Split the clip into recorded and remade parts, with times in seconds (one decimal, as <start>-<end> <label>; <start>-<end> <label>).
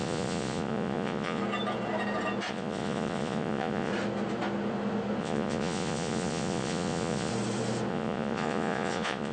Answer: 0.0-1.4 remade; 1.4-2.5 recorded; 2.5-3.9 remade; 3.9-5.2 recorded; 5.2-7.3 remade; 7.3-7.9 recorded; 7.9-9.3 remade